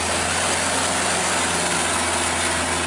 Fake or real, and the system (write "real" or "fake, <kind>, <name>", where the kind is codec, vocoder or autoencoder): real